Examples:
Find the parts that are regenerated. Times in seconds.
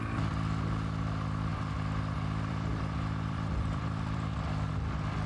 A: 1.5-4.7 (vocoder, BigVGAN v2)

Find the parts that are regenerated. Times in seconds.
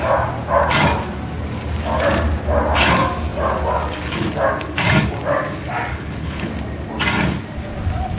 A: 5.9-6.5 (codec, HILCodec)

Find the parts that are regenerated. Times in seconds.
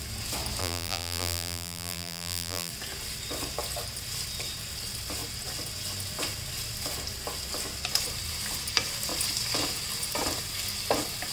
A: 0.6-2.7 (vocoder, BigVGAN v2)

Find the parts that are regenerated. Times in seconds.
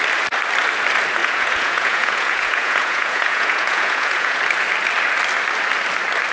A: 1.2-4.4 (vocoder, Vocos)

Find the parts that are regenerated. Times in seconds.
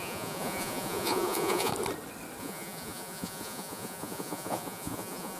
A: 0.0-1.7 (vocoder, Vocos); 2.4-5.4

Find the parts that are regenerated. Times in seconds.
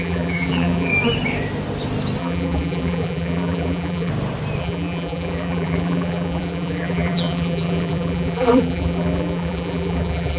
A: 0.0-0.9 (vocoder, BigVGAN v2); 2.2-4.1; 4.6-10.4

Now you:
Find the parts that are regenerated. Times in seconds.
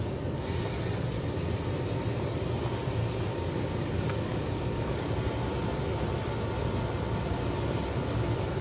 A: 3.3-5.2 (codec, DAC)